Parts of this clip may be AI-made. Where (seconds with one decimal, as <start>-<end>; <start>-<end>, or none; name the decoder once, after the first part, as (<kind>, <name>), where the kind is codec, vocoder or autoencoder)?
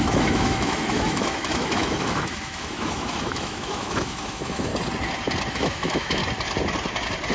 0.0-4.7 (autoencoder, DAC-VAE); 5.5-6.2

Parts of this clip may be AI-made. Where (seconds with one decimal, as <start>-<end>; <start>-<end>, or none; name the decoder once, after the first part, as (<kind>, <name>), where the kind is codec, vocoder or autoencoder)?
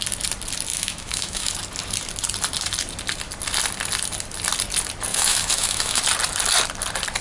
0.7-1.5 (autoencoder, DAC-VAE); 5.1-6.0